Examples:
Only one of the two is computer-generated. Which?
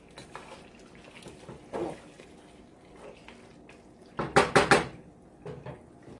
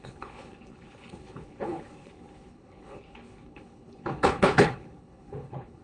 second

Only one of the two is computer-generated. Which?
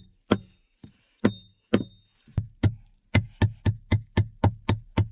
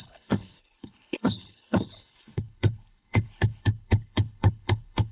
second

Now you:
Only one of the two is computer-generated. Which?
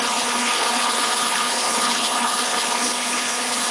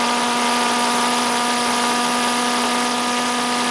first